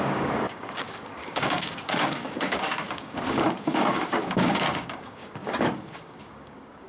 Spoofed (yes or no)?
yes